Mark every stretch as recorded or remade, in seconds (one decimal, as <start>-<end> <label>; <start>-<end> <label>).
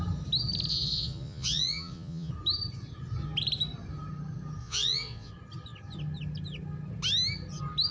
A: 0.0-0.7 recorded; 0.7-2.3 remade; 2.3-4.6 recorded; 4.6-5.3 remade; 5.3-7.9 recorded